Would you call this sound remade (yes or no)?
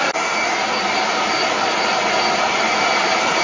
yes